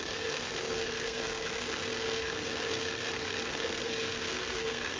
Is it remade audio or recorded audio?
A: remade